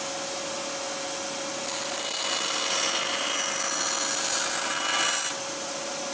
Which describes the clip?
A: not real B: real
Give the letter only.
B